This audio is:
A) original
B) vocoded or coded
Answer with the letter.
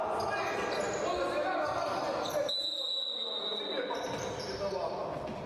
A